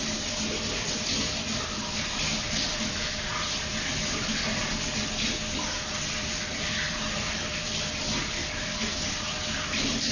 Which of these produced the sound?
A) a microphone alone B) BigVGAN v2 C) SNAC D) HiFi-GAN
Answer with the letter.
A